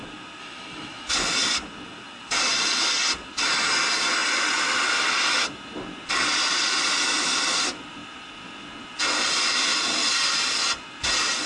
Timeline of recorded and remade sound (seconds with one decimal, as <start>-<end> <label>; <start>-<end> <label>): 0.0-0.4 recorded; 0.4-1.1 remade; 1.1-11.5 recorded